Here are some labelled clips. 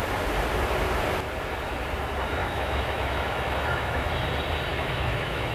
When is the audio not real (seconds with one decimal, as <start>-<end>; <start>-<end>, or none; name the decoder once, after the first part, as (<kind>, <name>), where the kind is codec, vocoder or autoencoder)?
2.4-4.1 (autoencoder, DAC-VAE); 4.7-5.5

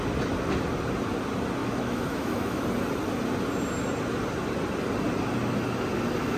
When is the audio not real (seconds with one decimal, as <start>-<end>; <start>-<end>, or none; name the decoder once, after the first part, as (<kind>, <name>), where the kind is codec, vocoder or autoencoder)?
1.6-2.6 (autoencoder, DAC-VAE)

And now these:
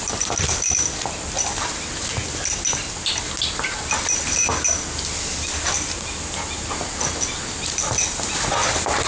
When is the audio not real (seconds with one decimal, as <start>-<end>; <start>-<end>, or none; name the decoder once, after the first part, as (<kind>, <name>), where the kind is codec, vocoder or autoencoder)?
none